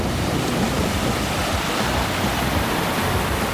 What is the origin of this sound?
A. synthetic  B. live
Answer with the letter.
B